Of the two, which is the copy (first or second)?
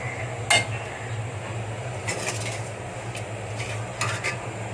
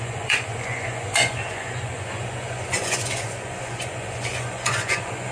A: second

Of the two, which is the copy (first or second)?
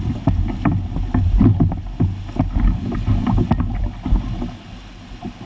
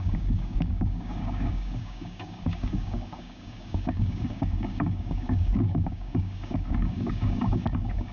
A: second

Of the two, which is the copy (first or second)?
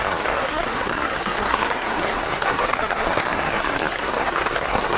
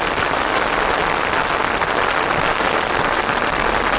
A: first